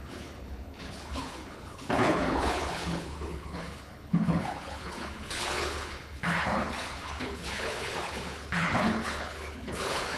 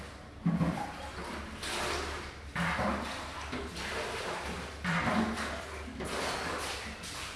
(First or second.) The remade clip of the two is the first